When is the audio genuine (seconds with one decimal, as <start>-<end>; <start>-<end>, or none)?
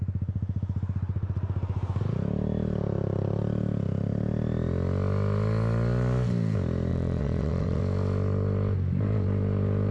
0.0-6.9; 7.8-9.9